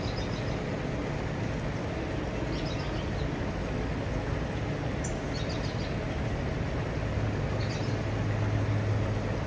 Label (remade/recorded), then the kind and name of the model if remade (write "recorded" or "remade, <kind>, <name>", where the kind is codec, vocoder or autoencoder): recorded